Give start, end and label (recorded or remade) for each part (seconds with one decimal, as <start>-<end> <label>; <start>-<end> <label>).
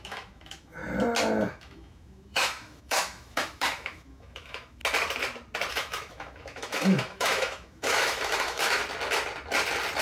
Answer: 0.0-0.8 remade; 0.8-1.5 recorded; 1.5-4.8 remade; 4.8-5.7 recorded; 5.7-8.8 remade; 8.8-10.0 recorded